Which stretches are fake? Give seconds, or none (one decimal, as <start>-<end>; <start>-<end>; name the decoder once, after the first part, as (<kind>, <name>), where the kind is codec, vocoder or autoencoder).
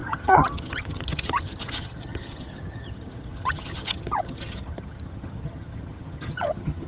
0.0-6.9 (vocoder, HiFi-GAN)